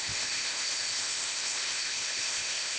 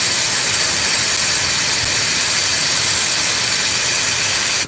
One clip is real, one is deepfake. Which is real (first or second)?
second